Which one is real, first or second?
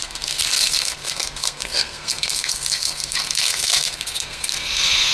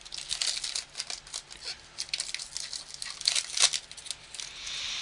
second